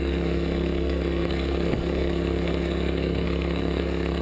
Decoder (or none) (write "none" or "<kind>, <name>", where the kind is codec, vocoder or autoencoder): codec, SNAC